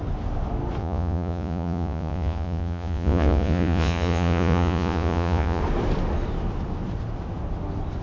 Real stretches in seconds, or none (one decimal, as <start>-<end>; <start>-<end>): 0.0-0.8; 5.6-8.0